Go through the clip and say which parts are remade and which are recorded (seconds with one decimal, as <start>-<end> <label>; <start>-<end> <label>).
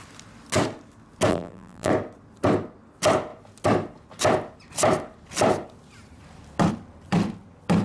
0.0-1.3 recorded; 1.3-1.9 remade; 1.9-7.8 recorded